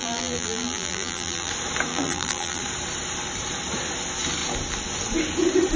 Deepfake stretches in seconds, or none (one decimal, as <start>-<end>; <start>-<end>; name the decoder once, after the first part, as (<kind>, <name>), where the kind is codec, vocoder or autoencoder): 0.0-1.5 (vocoder, BigVGAN v2); 1.9-2.6